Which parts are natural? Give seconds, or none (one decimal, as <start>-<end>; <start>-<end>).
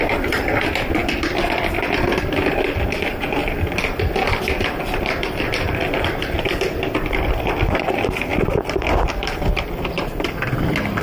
0.0-11.0